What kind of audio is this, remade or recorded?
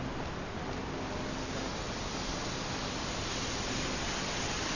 recorded